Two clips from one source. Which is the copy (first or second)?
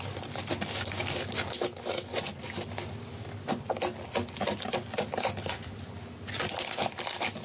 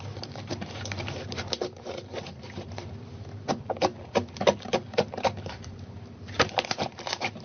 second